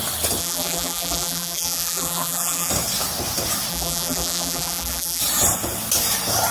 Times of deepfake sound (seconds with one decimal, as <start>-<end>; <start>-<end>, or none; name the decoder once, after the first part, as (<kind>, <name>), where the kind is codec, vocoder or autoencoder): 0.4-2.7 (vocoder, BigVGAN v2); 3.7-5.2